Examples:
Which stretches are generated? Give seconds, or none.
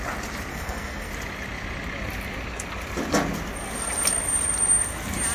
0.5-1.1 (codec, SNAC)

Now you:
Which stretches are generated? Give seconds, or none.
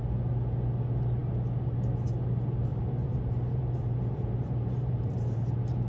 2.7-5.9 (vocoder, BigVGAN v2)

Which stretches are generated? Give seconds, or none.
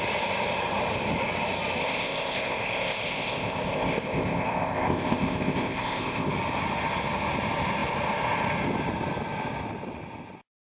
1.8-6.3 (codec, ZipCodec)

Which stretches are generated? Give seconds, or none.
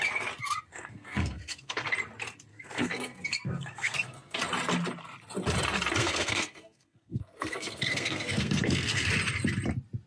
0.7-1.9 (codec, SNAC); 2.5-4.4; 6.0-9.1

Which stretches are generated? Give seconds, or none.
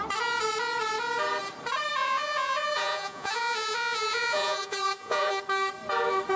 2.0-5.3 (vocoder, Vocos)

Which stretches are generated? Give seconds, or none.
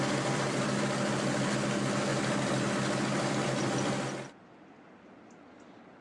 none